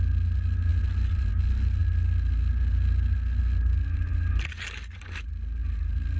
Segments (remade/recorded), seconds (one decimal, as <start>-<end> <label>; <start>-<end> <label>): 0.0-6.2 recorded